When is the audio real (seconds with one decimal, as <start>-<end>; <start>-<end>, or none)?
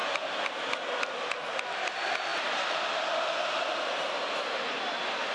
0.7-5.3